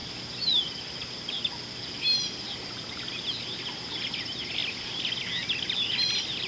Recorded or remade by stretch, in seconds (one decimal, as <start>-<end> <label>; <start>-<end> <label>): 0.0-6.5 recorded